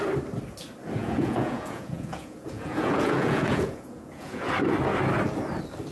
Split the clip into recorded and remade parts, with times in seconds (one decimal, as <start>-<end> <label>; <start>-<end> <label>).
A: 0.0-1.0 recorded; 1.0-4.5 remade; 4.5-5.9 recorded